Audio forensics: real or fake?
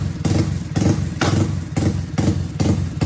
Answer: real